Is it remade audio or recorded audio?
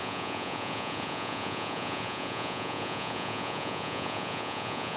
remade